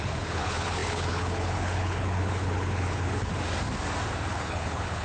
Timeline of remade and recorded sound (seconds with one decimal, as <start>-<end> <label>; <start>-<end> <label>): 0.0-3.3 remade; 3.3-4.3 recorded; 4.3-5.0 remade